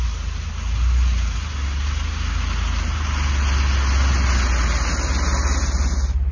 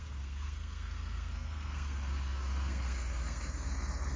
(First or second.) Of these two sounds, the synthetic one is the second